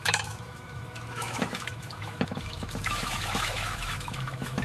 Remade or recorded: remade